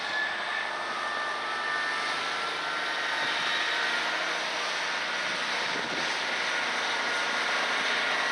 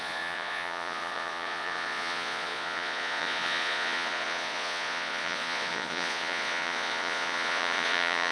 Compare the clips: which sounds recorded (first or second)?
first